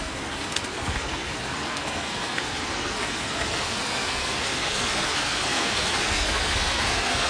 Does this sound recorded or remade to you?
remade